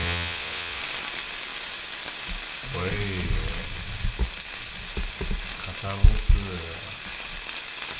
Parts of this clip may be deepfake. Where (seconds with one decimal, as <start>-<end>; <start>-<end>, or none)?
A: 0.0-0.8